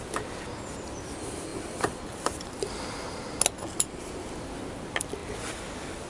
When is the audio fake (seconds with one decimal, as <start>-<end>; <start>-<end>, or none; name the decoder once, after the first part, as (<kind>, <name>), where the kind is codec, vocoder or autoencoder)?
1.5-2.7 (vocoder, BigVGAN v2)